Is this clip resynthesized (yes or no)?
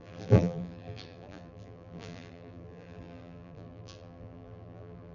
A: yes